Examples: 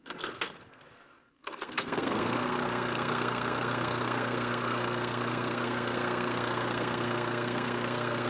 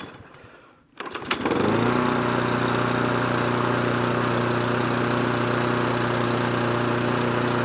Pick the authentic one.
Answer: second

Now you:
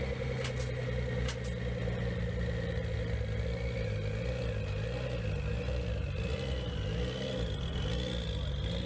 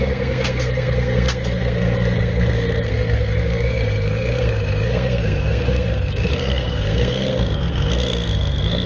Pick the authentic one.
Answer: first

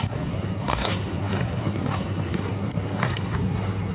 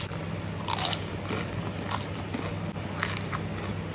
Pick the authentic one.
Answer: second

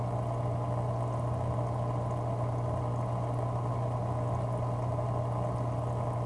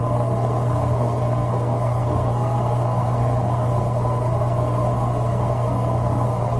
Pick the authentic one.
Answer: first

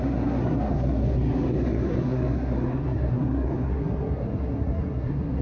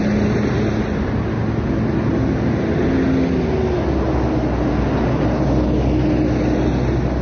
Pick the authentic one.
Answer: second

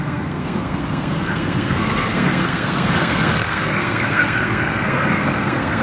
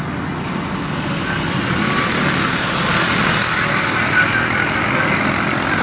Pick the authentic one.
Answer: second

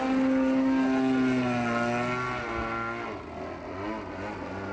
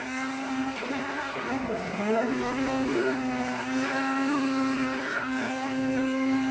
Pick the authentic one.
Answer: first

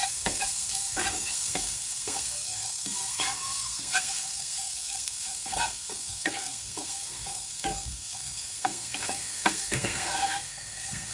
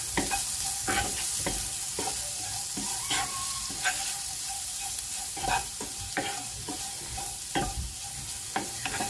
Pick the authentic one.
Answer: second